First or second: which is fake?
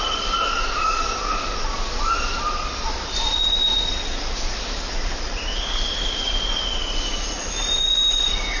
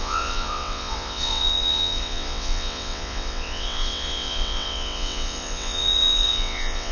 second